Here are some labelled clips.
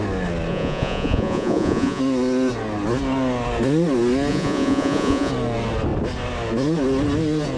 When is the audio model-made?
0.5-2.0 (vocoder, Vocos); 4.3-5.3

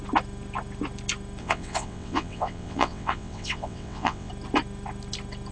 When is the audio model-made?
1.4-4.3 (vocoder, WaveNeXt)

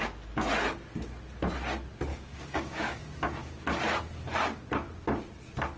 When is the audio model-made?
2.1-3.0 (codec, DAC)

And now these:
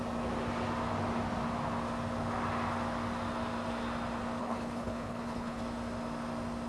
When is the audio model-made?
4.4-5.6 (codec, HILCodec)